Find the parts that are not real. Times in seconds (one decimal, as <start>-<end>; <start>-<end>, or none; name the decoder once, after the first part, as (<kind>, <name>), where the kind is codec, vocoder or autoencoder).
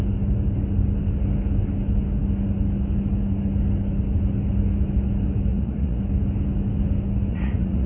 5.5-6.0 (vocoder, Vocos); 7.3-7.9